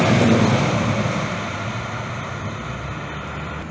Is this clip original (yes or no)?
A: yes